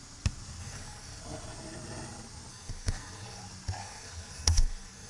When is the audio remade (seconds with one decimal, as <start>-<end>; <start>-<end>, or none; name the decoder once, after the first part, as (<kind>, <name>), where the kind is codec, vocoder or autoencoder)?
0.6-1.2 (codec, SNAC); 2.5-3.4; 3.8-5.1